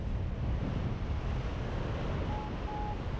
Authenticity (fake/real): real